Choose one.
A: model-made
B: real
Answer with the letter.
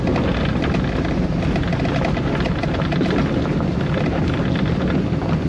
B